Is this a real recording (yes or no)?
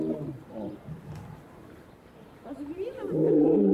no